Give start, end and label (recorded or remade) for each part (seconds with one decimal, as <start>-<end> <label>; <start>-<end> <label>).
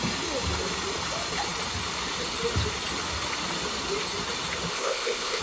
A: 0.0-4.7 recorded; 4.7-5.4 remade